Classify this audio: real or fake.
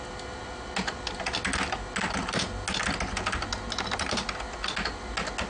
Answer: real